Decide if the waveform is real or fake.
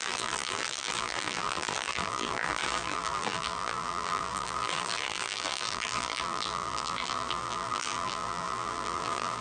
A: fake